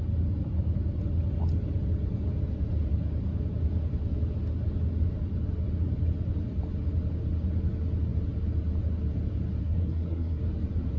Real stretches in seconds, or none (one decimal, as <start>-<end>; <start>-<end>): 0.0-9.6; 10.4-11.0